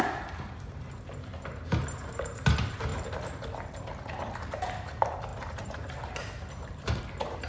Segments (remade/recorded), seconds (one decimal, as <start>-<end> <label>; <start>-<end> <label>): 0.0-2.9 remade; 2.9-4.2 recorded; 4.2-7.5 remade